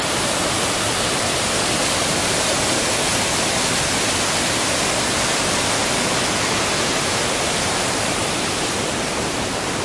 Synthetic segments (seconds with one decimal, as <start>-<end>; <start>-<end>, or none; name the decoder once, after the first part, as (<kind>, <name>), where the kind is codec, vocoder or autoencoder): 0.0-3.1 (vocoder, BigVGAN v2); 7.0-9.8